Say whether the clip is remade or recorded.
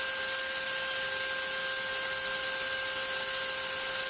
recorded